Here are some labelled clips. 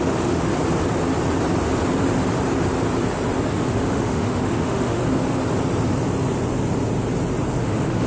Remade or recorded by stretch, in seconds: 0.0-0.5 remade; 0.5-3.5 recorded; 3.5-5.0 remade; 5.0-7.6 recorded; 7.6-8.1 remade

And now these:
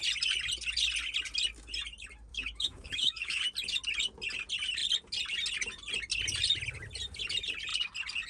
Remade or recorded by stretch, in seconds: 0.0-2.3 recorded; 2.3-3.4 remade; 3.4-8.3 recorded

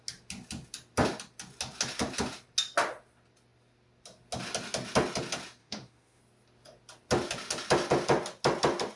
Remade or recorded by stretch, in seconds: 0.0-5.6 recorded; 5.6-6.2 remade; 6.2-9.0 recorded

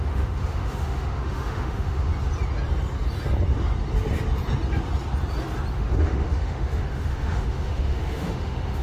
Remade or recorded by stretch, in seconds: 0.0-2.1 remade; 2.1-5.7 recorded; 5.7-8.8 remade

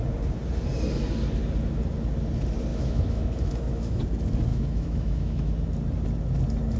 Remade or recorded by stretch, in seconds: 0.0-2.7 recorded; 2.7-4.0 remade; 4.0-4.5 recorded; 4.5-5.5 remade; 5.5-6.8 recorded

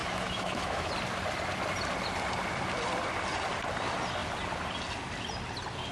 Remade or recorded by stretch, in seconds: 0.0-0.9 remade; 0.9-5.9 recorded